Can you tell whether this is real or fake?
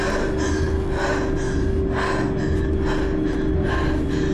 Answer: real